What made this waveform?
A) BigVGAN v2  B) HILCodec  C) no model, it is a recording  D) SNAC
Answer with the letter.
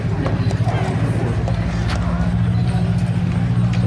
C